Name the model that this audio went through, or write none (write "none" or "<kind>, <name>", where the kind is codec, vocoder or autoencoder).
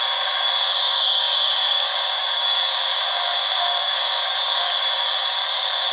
codec, DAC